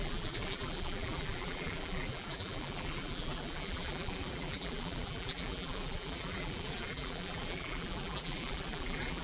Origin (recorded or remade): remade